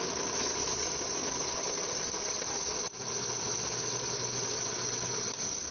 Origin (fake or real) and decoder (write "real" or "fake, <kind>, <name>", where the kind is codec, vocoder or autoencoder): real